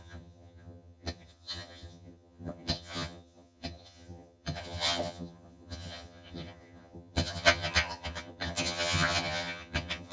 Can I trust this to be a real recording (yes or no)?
no